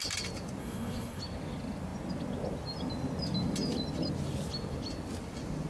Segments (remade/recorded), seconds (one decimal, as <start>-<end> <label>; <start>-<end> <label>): 0.0-0.6 recorded; 0.6-1.2 remade; 1.2-5.7 recorded

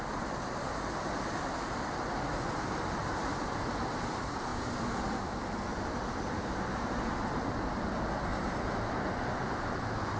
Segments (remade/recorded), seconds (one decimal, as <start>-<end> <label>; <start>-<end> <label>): 0.0-3.0 recorded; 3.0-3.7 remade; 3.7-4.5 recorded; 4.5-6.4 remade; 6.4-8.3 recorded; 8.3-8.9 remade; 8.9-10.2 recorded